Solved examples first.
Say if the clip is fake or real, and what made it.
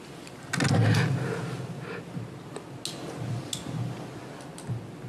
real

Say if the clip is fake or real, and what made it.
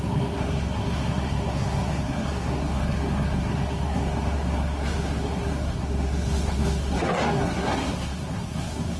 fake, codec, SNAC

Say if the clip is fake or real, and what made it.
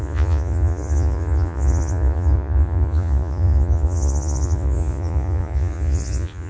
fake, vocoder, Vocos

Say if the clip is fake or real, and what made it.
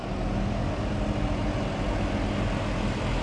real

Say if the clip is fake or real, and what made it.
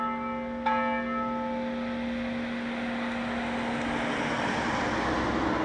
real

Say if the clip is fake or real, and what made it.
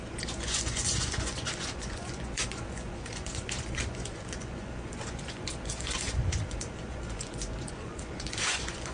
fake, vocoder, Vocos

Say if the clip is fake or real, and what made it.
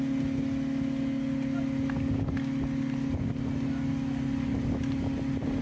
real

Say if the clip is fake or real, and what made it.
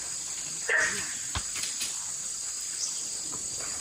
real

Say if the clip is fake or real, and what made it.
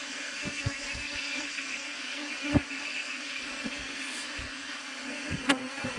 fake, codec, SNAC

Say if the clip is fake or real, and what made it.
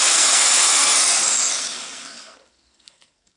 fake, codec, SNAC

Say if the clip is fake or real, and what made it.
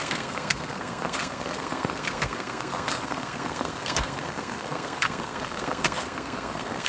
fake, codec, SNAC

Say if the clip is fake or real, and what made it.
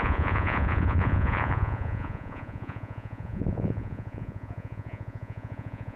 fake, vocoder, Vocos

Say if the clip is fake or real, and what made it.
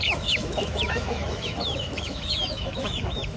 fake, autoencoder, DAC-VAE